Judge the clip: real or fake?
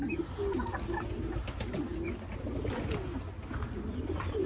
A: real